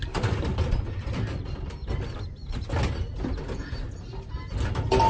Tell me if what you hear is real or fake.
real